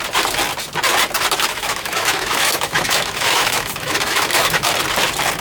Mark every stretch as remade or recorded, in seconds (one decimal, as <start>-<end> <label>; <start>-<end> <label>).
0.0-1.5 recorded; 1.5-4.7 remade; 4.7-5.4 recorded